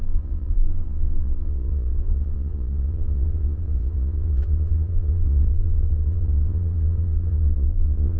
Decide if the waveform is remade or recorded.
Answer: remade